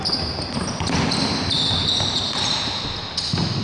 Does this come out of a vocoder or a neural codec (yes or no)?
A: no